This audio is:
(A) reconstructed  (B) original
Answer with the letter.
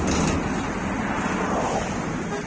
B